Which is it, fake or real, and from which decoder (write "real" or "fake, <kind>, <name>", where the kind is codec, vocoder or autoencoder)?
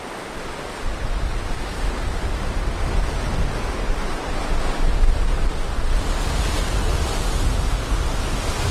real